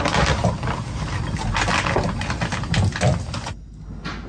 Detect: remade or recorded recorded